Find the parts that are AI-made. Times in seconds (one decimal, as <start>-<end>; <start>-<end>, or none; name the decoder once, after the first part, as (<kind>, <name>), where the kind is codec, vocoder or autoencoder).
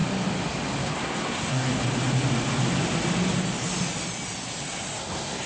0.8-1.7 (codec, SNAC); 5.0-5.5